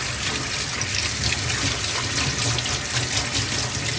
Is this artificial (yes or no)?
no